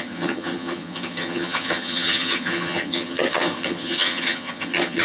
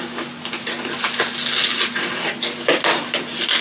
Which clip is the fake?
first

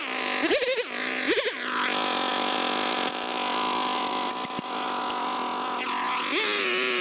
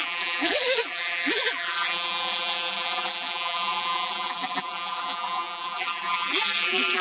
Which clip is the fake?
second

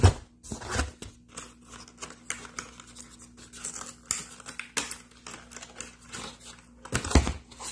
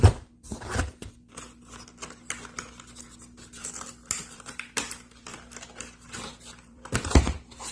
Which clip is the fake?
second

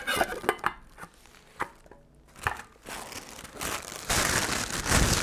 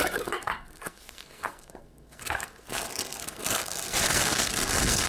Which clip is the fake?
second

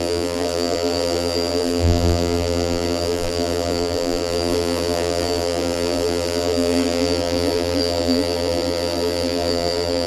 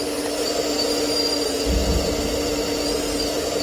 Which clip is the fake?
first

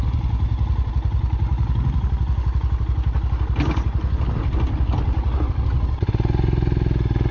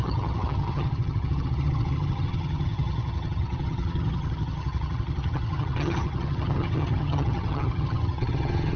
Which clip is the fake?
second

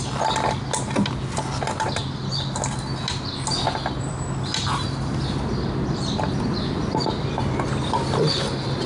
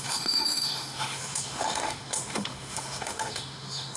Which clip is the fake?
second